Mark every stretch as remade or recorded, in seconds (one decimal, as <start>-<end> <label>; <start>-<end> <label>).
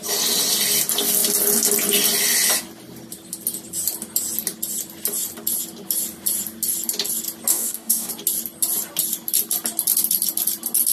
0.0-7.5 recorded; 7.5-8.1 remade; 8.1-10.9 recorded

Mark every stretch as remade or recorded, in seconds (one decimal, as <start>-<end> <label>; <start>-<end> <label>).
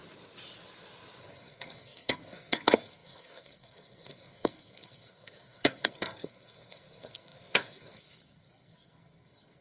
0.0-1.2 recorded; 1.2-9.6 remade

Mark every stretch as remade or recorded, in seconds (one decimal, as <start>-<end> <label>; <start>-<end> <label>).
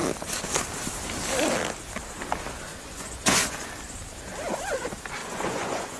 0.0-2.7 recorded; 2.7-3.7 remade; 3.7-5.2 recorded; 5.2-6.0 remade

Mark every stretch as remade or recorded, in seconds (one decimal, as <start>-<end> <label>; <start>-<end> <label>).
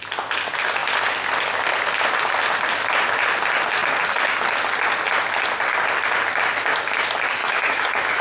0.0-7.4 recorded; 7.4-8.2 remade